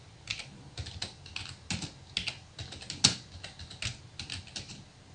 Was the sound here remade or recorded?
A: recorded